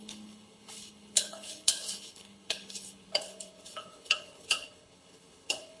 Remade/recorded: remade